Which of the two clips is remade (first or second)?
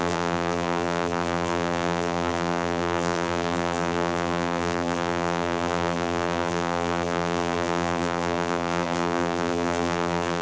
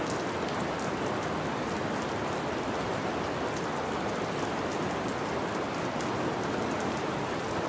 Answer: first